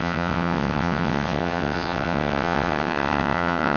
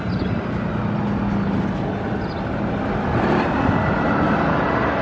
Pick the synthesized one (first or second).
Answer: first